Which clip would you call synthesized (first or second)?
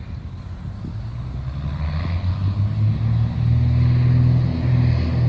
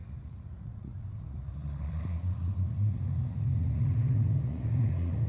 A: second